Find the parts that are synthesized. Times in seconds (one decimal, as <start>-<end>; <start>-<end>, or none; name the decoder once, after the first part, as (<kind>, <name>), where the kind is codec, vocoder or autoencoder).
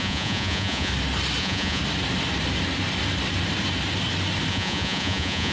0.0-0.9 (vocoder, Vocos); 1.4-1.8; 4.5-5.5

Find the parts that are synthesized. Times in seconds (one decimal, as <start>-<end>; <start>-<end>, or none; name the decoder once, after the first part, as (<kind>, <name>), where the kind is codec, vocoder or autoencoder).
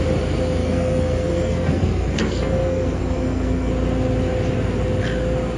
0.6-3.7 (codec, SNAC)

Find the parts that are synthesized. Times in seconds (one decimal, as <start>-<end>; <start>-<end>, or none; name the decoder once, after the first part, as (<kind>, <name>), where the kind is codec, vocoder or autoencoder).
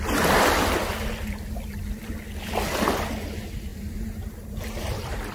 3.7-5.3 (vocoder, BigVGAN v2)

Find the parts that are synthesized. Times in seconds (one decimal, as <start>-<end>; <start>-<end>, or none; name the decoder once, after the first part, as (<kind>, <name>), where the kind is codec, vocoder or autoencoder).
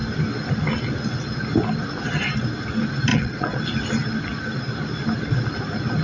3.1-3.6 (vocoder, Vocos)